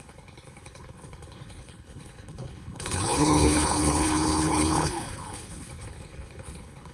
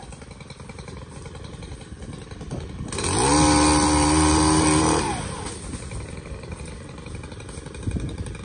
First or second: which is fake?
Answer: first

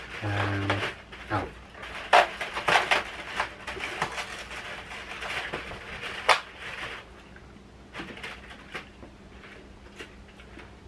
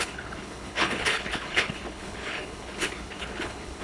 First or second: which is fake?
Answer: second